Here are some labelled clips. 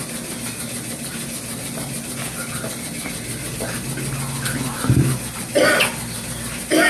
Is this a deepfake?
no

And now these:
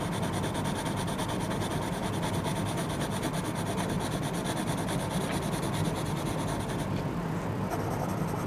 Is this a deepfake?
no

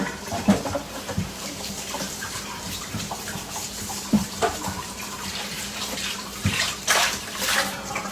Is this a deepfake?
yes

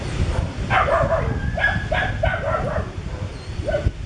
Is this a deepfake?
no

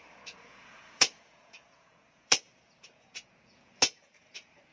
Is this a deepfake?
yes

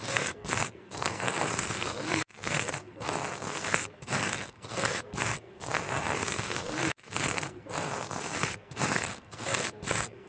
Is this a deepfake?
yes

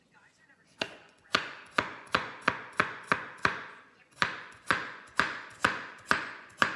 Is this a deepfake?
yes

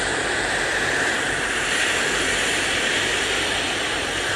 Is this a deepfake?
no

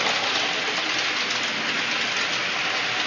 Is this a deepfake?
no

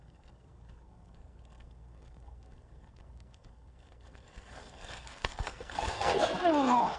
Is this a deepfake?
yes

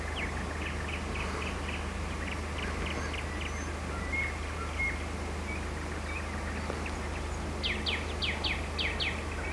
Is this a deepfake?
no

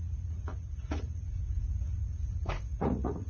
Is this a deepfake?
yes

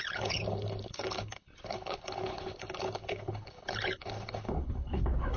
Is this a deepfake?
yes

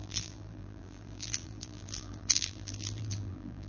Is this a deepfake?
yes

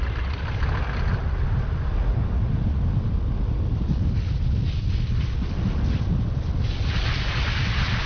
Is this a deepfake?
no